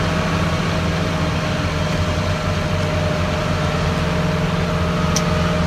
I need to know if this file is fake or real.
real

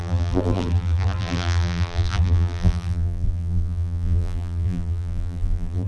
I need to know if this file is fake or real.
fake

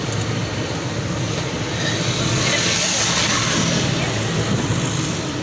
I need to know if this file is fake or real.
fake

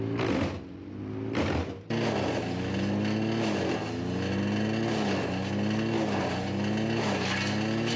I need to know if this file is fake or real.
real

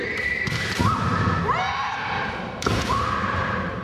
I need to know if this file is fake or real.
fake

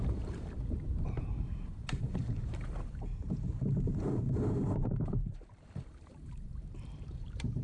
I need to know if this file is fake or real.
fake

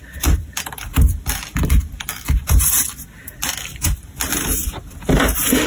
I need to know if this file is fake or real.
fake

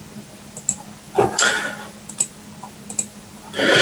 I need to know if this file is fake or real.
real